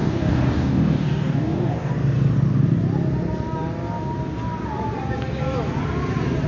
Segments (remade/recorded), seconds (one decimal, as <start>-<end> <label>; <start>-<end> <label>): 0.0-1.9 remade; 1.9-6.5 recorded